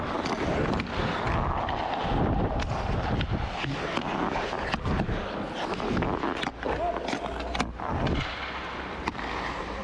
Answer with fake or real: real